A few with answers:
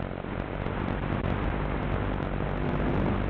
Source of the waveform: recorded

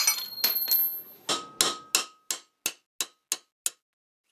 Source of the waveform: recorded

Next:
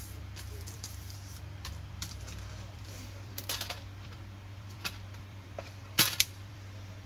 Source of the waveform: remade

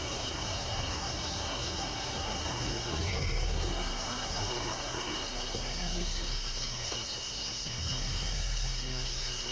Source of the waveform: remade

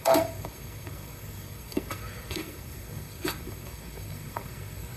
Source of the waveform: remade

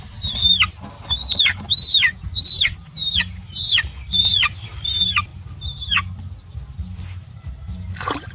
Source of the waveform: recorded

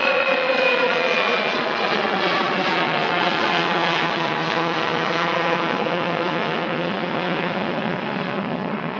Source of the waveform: remade